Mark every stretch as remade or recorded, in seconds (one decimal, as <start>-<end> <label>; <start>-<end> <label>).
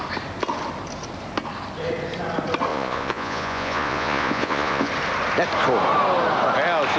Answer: 0.0-2.7 recorded; 2.7-4.9 remade; 4.9-7.0 recorded